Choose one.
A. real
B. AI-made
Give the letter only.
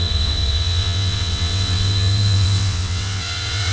B